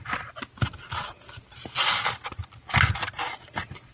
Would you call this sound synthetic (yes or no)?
no